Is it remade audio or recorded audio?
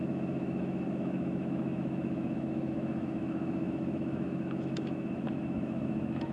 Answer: remade